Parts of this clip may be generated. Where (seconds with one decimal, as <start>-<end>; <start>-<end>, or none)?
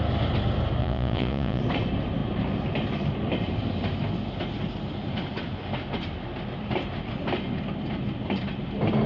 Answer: 0.8-1.6